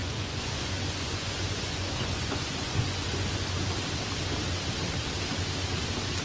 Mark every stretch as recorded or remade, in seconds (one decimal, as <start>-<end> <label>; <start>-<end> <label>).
0.0-3.7 remade; 3.7-6.2 recorded

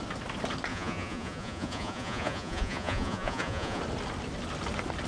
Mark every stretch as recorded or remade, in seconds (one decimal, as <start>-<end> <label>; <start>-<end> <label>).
0.0-0.7 recorded; 0.7-3.8 remade; 3.8-5.1 recorded

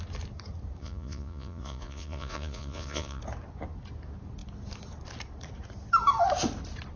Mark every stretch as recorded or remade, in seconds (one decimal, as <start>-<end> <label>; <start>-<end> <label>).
0.0-0.8 recorded; 0.8-3.2 remade; 3.2-7.0 recorded

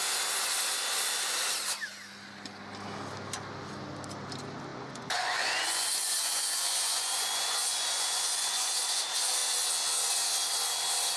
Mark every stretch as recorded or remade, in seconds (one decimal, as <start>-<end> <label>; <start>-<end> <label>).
0.0-4.7 recorded; 4.7-9.0 remade; 9.0-11.2 recorded

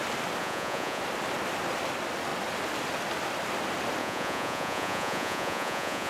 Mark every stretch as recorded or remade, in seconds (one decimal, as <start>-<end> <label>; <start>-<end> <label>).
0.0-0.4 recorded; 0.4-1.0 remade; 1.0-4.0 recorded; 4.0-6.1 remade

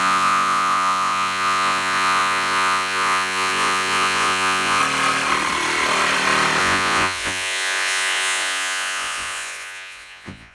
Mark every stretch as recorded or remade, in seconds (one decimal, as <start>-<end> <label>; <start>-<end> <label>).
0.0-4.8 remade; 4.8-6.6 recorded; 6.6-10.5 remade

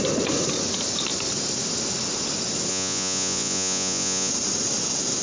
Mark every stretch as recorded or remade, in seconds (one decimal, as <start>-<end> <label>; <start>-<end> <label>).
0.0-2.7 recorded; 2.7-4.3 remade; 4.3-5.2 recorded